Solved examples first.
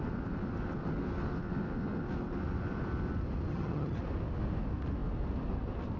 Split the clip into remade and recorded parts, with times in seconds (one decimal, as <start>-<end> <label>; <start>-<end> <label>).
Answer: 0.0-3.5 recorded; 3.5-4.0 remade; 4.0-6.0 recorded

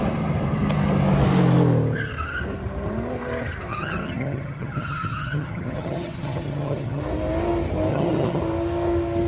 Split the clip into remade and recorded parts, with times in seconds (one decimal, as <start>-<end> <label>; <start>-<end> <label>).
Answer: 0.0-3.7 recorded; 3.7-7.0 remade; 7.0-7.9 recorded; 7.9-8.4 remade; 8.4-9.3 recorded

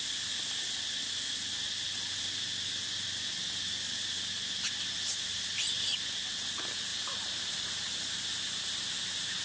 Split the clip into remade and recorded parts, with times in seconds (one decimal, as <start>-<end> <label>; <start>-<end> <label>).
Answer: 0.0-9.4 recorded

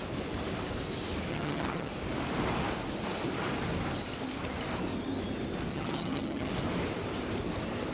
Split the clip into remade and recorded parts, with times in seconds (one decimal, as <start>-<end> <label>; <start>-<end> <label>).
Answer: 0.0-1.3 recorded; 1.3-1.9 remade; 1.9-5.7 recorded; 5.7-6.5 remade; 6.5-7.9 recorded

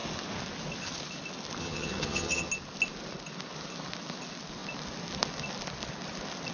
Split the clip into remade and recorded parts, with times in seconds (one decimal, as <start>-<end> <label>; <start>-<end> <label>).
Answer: 0.0-1.6 recorded; 1.6-2.5 remade; 2.5-6.5 recorded

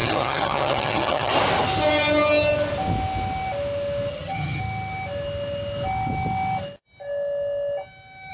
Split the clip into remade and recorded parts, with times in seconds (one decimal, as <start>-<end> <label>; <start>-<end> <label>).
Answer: 0.0-1.3 remade; 1.3-4.1 recorded; 4.1-4.6 remade; 4.6-8.3 recorded

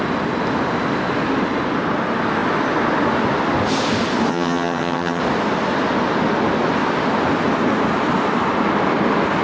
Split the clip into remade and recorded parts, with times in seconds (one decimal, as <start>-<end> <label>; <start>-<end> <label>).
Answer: 0.0-4.3 recorded; 4.3-5.2 remade; 5.2-9.4 recorded

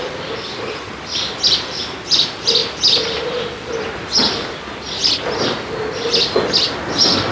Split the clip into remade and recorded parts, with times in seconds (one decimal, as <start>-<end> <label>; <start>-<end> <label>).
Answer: 0.0-7.3 recorded